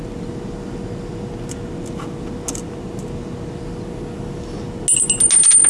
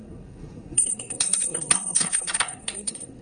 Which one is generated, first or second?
second